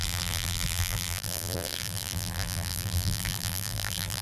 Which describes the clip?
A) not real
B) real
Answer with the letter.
A